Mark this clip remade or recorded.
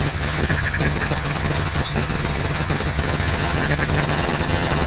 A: remade